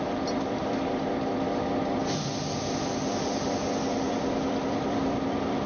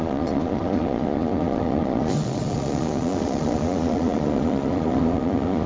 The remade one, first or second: second